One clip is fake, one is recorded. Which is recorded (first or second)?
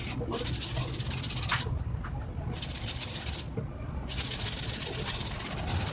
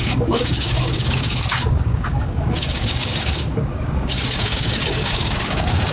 first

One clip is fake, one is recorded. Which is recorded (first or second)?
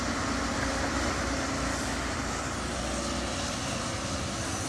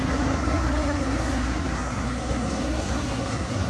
first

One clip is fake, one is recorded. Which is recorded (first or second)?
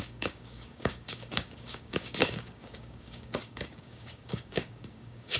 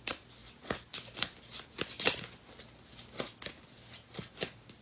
second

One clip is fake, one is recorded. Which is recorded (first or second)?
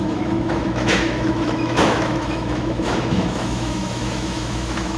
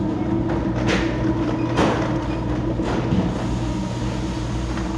second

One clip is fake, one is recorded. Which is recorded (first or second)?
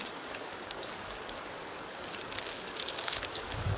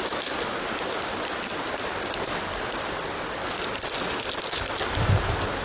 second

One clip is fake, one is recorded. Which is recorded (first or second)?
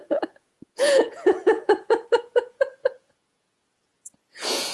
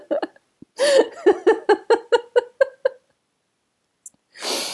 second